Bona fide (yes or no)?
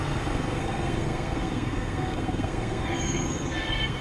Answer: no